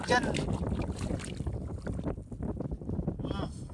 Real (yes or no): yes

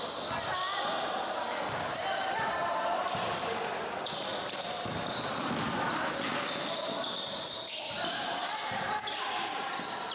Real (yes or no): yes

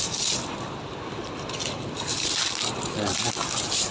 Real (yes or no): yes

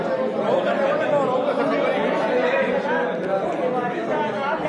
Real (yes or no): yes